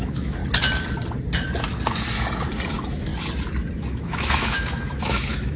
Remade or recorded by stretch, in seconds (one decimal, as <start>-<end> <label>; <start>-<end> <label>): 0.0-0.4 remade; 0.4-2.7 recorded; 2.7-3.1 remade; 3.1-3.8 recorded; 3.8-5.6 remade